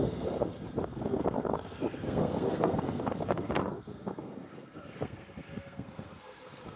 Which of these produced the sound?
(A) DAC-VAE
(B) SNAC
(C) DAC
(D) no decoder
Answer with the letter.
B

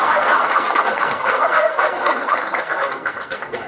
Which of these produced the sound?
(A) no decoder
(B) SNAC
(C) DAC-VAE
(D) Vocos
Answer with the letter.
B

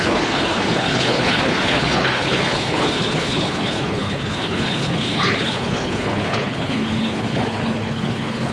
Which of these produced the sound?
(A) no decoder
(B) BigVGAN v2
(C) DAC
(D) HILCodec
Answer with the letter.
D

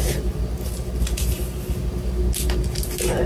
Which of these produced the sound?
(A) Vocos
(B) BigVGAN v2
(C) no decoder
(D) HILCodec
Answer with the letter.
C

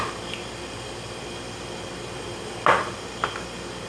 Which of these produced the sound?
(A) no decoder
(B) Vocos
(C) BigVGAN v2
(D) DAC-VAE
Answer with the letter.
A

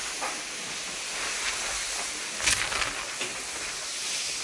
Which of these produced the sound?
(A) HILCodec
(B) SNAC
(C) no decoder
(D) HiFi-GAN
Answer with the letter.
C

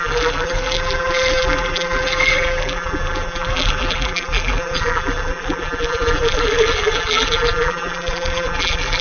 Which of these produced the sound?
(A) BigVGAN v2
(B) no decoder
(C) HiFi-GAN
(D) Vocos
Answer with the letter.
A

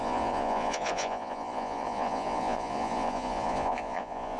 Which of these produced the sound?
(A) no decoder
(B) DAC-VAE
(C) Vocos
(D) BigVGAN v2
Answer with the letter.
C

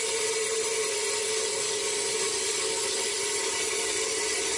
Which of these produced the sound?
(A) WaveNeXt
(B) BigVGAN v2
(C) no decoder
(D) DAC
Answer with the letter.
C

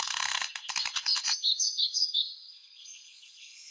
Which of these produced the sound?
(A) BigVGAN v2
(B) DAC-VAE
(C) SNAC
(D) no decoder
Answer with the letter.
C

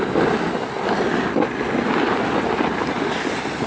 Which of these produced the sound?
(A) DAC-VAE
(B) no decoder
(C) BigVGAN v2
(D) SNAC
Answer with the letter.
B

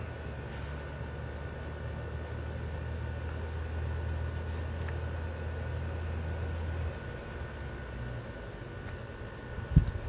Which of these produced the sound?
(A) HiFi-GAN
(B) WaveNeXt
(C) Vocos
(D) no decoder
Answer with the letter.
D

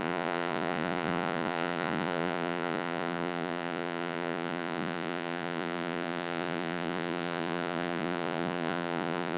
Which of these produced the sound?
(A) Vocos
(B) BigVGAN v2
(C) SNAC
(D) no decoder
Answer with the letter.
A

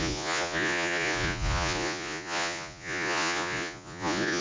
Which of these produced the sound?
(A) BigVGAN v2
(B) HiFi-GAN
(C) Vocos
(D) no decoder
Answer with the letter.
C